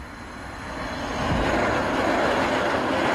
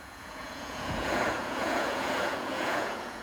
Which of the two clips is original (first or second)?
first